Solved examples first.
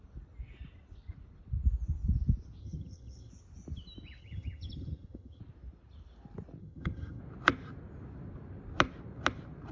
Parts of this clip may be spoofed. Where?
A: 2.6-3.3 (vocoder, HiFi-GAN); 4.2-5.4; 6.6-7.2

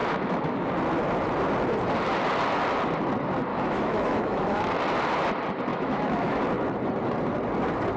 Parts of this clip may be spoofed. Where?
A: 0.0-0.7 (autoencoder, DAC-VAE); 3.5-4.6; 5.7-6.4

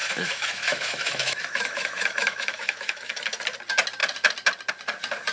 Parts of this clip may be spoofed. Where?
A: 0.0-3.2 (autoencoder, DAC-VAE)

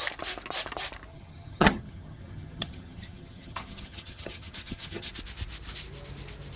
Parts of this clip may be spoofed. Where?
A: 1.1-5.1 (vocoder, HiFi-GAN)